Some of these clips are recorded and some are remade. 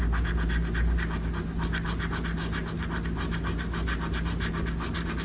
recorded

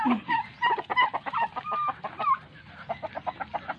recorded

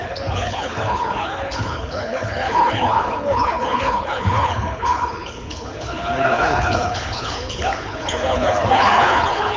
remade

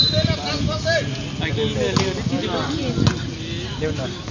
recorded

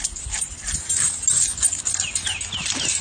recorded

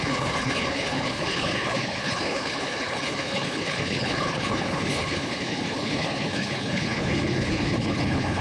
remade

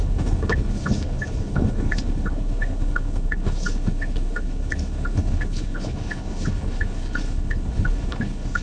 remade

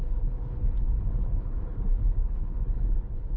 remade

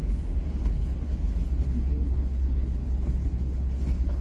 remade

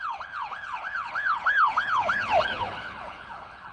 remade